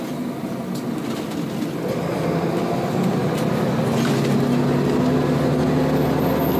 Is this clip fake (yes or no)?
no